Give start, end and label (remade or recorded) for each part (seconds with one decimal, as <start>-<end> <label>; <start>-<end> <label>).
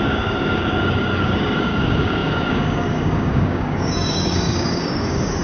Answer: 0.0-5.4 remade